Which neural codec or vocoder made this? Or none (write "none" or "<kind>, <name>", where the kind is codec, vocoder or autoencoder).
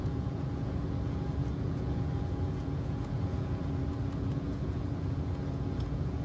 vocoder, Vocos